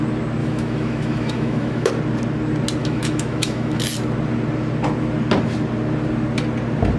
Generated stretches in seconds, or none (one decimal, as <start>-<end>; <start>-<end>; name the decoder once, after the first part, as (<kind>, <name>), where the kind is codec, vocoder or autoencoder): 0.4-1.9 (autoencoder, DAC-VAE); 2.8-3.8